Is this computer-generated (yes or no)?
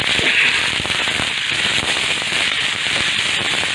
no